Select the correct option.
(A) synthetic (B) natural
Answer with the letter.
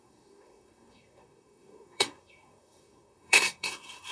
A